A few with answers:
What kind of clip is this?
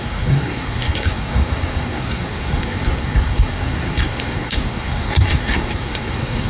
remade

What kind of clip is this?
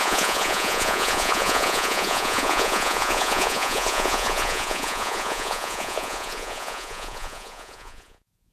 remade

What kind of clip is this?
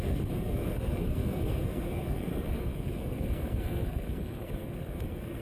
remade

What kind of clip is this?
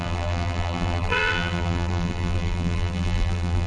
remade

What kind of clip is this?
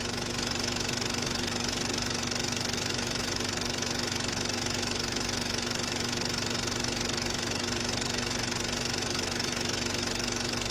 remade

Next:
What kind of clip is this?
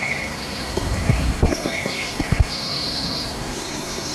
remade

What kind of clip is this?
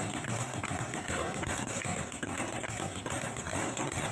remade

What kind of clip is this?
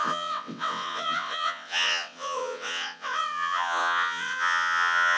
remade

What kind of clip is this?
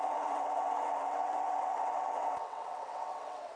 remade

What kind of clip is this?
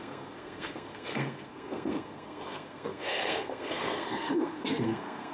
remade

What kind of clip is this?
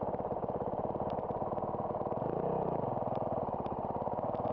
recorded